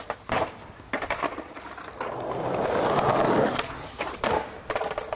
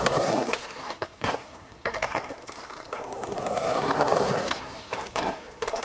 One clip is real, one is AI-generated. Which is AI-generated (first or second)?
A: second